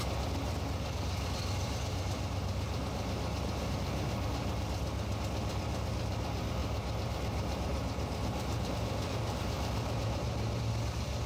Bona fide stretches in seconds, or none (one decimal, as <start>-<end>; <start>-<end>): 0.0-6.6; 10.7-11.3